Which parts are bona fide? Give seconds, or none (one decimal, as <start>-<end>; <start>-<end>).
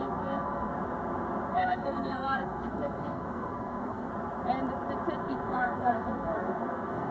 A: 0.7-1.5; 4.1-5.2